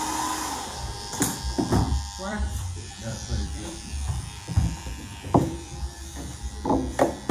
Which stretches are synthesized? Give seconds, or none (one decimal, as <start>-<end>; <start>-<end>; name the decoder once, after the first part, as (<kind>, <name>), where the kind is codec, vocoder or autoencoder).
2.3-6.5 (vocoder, BigVGAN v2)